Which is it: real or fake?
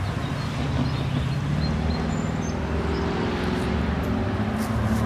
real